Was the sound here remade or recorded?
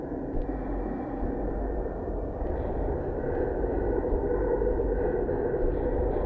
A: remade